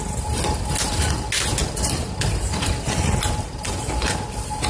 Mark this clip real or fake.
real